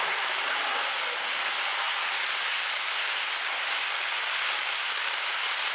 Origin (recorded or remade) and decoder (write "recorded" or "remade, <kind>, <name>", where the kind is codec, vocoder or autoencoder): recorded